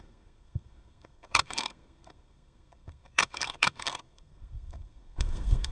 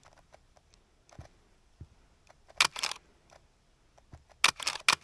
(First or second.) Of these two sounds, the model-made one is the first